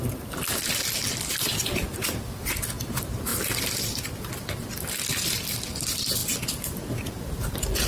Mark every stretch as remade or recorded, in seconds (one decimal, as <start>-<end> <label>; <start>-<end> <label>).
0.0-3.3 remade; 3.3-3.8 recorded; 3.8-6.2 remade; 6.2-7.3 recorded; 7.3-7.9 remade

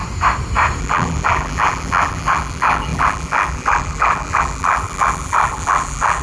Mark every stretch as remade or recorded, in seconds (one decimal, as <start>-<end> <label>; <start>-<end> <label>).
0.0-0.8 recorded; 0.8-6.2 remade

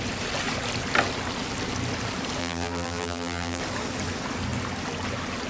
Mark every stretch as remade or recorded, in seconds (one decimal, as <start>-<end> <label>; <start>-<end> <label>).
0.0-2.4 recorded; 2.4-3.6 remade; 3.6-5.5 recorded

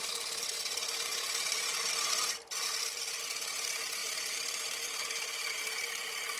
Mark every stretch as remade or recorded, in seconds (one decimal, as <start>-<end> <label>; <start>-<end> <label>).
0.0-1.1 recorded; 1.1-1.9 remade; 1.9-4.0 recorded; 4.0-5.5 remade; 5.5-6.4 recorded

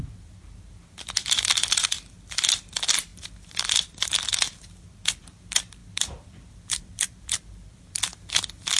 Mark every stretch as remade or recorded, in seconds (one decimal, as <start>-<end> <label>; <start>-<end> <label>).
0.0-8.1 remade; 8.1-8.8 recorded

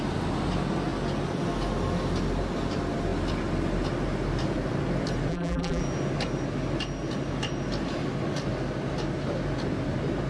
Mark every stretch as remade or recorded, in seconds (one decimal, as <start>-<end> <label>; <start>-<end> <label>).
0.0-5.3 recorded; 5.3-5.8 remade; 5.8-10.3 recorded

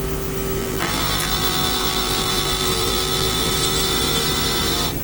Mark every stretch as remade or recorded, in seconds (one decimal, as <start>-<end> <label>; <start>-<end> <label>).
0.0-0.6 recorded; 0.6-3.5 remade; 3.5-5.0 recorded